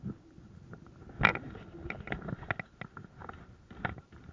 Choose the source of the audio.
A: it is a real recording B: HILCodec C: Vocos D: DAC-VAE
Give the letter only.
A